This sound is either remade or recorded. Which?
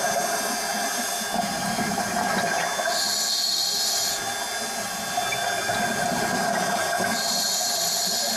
recorded